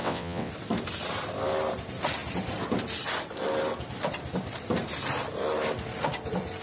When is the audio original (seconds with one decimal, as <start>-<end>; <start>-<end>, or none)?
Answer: 0.5-6.6